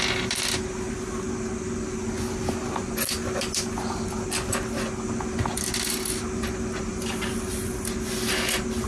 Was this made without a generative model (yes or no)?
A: yes